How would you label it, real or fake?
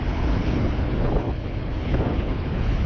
fake